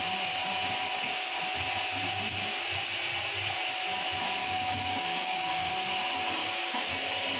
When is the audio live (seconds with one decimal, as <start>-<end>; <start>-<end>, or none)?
0.0-4.4; 5.7-6.4; 6.9-7.4